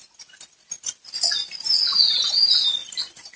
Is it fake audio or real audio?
real